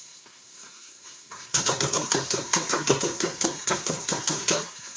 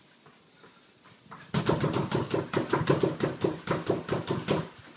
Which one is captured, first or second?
second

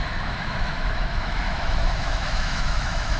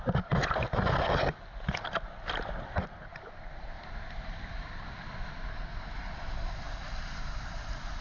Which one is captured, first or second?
second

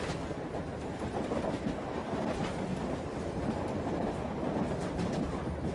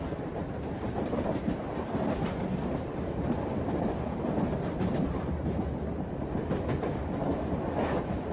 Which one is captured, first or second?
first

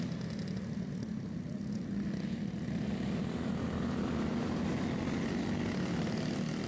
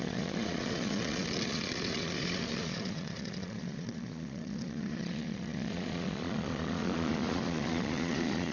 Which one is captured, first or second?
first